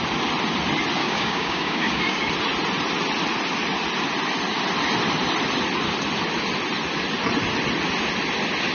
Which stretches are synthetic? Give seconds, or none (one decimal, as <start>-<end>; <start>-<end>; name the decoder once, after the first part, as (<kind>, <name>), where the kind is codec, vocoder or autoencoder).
1.0-2.3 (codec, DAC)